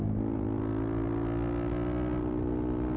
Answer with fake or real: real